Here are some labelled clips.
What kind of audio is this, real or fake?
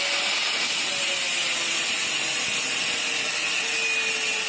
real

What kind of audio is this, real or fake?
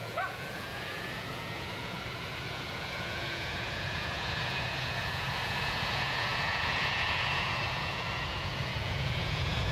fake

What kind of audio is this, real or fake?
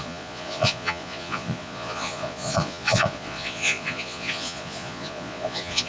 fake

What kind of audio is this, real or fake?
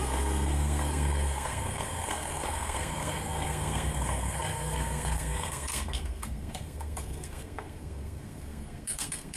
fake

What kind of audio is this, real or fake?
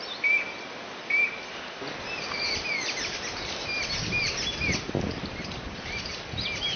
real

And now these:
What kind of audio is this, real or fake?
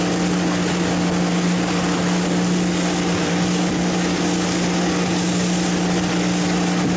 real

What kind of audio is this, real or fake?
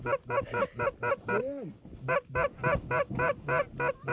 real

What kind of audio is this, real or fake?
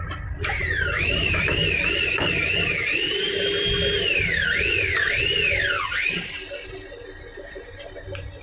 real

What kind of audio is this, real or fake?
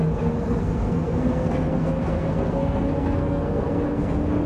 fake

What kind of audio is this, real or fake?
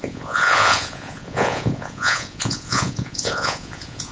fake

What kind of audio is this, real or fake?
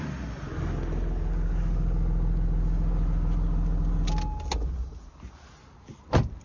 real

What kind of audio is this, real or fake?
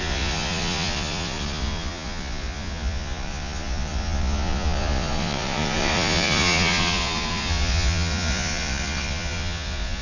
fake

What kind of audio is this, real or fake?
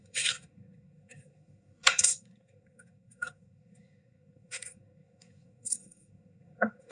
fake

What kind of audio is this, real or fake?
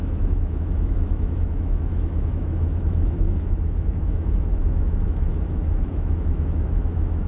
fake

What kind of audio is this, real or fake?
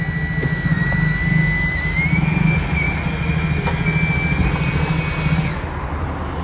real